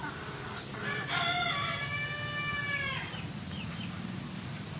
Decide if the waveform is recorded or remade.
recorded